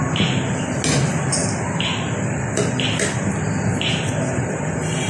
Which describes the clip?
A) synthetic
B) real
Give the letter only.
B